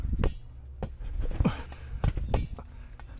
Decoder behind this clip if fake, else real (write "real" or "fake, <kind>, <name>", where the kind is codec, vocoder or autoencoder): real